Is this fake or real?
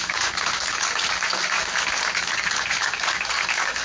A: fake